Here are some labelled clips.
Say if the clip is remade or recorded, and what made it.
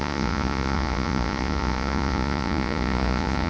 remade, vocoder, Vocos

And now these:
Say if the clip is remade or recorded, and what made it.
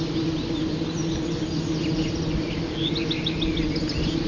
recorded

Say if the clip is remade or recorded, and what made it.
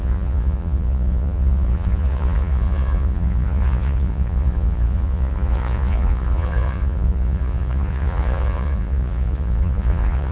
remade, vocoder, Vocos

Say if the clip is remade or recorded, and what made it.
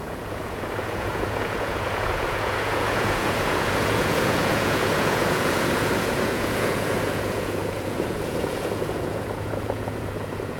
remade, vocoder, Vocos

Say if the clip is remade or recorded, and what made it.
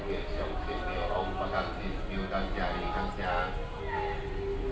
recorded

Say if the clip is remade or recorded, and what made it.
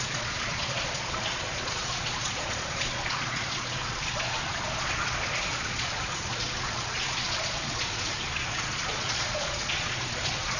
remade, vocoder, Vocos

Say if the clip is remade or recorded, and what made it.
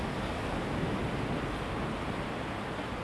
recorded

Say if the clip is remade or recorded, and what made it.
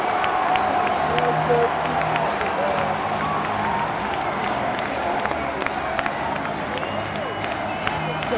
recorded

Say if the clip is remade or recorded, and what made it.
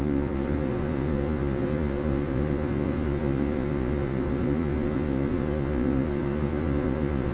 remade, vocoder, Vocos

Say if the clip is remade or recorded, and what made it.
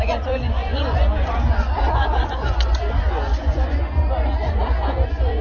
remade, vocoder, Vocos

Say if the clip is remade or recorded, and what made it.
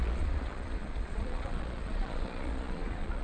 remade, vocoder, Vocos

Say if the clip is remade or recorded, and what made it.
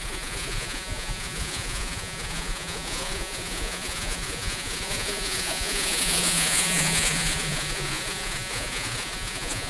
remade, vocoder, Vocos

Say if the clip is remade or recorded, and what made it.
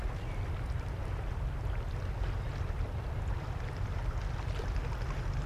recorded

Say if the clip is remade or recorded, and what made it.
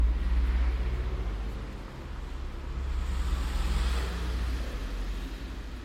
recorded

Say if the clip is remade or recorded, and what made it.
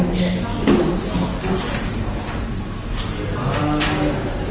recorded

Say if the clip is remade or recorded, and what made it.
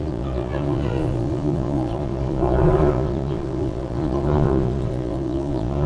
remade, vocoder, Vocos